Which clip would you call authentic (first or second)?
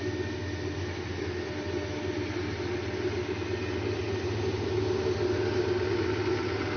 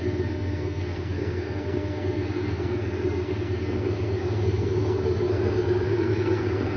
first